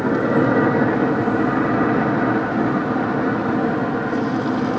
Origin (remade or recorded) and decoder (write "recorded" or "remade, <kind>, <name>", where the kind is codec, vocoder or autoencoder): recorded